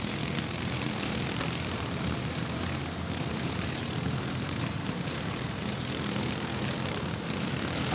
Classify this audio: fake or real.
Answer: fake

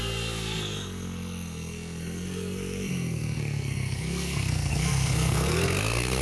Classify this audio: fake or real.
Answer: fake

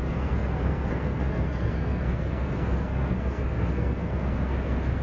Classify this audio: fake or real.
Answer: fake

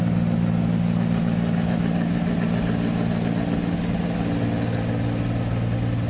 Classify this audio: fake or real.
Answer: real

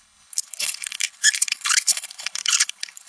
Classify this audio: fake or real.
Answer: fake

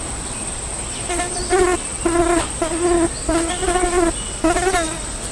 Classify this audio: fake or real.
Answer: real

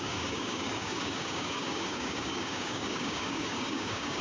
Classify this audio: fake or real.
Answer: fake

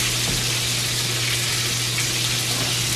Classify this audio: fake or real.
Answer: real